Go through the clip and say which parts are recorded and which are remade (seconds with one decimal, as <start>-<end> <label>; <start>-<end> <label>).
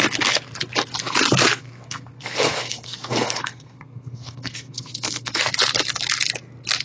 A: 0.0-1.6 recorded; 1.6-5.4 remade; 5.4-6.8 recorded